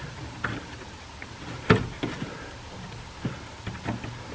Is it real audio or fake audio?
real